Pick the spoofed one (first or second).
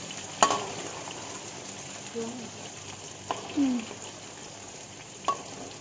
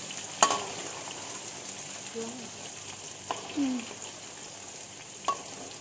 first